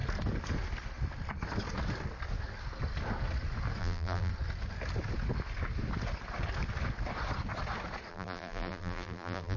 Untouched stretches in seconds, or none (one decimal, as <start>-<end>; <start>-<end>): 0.0-3.8; 4.3-8.1